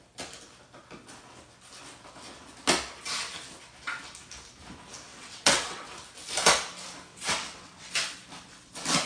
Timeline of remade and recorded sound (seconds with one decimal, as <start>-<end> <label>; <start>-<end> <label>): 0.0-5.1 recorded; 5.1-5.9 remade; 5.9-7.1 recorded; 7.1-7.9 remade; 7.9-9.1 recorded

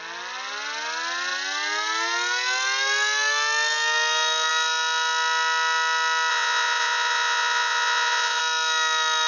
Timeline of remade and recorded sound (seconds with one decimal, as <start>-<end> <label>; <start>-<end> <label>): 0.0-6.3 recorded; 6.3-8.4 remade; 8.4-9.3 recorded